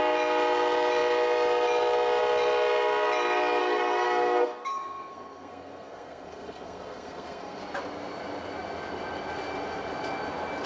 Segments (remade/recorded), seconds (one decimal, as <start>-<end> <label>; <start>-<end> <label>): 0.0-3.6 recorded; 3.6-7.6 remade; 7.6-10.7 recorded